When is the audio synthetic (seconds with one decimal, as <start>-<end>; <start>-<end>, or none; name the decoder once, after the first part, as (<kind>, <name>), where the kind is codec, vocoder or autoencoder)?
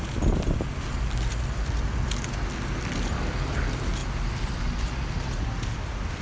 4.0-4.8 (vocoder, BigVGAN v2)